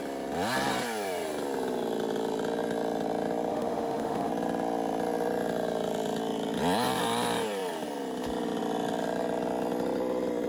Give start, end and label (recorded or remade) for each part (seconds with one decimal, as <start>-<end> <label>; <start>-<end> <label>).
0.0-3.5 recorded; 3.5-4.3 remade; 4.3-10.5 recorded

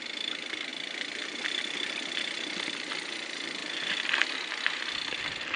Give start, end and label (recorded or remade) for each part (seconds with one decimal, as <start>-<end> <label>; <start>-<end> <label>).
0.0-5.6 recorded

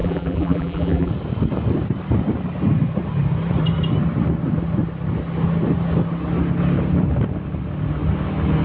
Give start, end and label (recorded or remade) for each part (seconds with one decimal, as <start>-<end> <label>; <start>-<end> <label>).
0.0-1.1 remade; 1.1-8.6 recorded

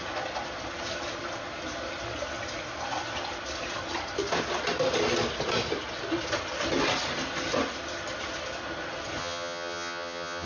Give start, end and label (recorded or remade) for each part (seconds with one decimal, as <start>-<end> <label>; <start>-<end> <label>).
0.0-9.2 recorded; 9.2-10.5 remade